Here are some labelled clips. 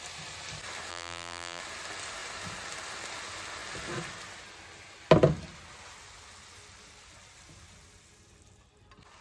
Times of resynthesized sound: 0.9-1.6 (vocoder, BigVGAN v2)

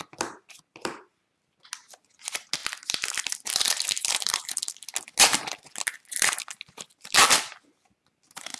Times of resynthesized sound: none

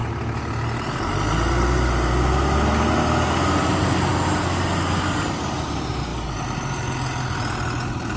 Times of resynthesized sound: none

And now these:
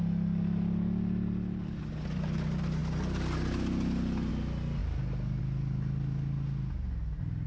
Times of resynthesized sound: none